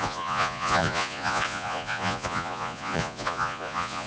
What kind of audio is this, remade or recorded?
remade